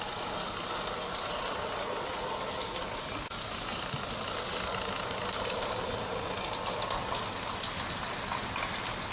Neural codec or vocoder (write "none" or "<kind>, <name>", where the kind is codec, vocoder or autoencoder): none